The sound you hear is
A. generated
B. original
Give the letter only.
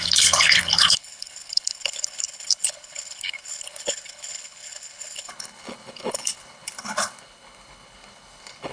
A